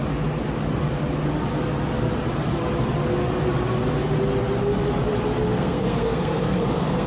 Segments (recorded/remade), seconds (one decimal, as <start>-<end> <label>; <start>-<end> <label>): 0.0-5.5 recorded; 5.5-7.1 remade

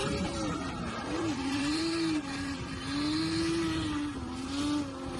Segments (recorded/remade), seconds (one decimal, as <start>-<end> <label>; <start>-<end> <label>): 0.0-2.7 remade; 2.7-5.2 recorded

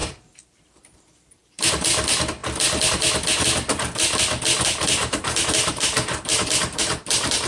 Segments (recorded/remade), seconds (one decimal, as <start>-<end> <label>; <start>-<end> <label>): 0.0-1.7 remade; 1.7-5.0 recorded; 5.0-7.5 remade

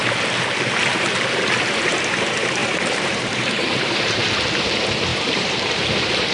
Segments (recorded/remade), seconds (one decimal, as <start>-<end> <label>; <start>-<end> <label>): 0.0-1.8 recorded; 1.8-6.3 remade

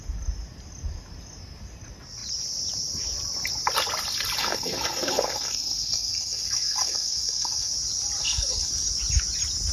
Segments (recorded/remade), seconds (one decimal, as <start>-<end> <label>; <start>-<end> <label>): 0.0-4.4 recorded; 4.4-7.7 remade; 7.7-8.2 recorded; 8.2-8.7 remade; 8.7-9.7 recorded

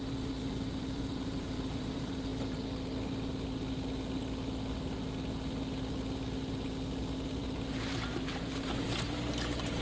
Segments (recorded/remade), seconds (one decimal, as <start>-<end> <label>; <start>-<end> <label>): 0.0-2.3 remade; 2.3-7.4 recorded; 7.4-9.8 remade